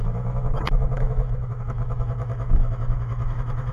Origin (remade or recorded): remade